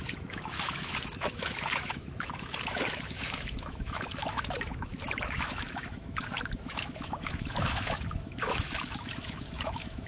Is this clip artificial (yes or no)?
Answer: yes